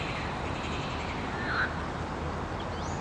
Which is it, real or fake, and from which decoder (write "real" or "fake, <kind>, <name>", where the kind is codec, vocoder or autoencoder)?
real